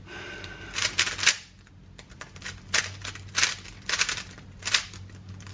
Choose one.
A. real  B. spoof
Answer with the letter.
A